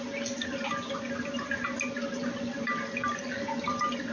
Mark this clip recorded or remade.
recorded